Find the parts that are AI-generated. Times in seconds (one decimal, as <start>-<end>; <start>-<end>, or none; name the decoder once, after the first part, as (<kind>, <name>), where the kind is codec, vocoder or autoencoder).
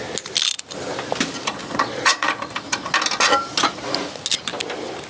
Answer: 1.6-2.3 (vocoder, Vocos)